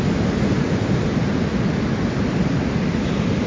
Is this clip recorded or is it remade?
recorded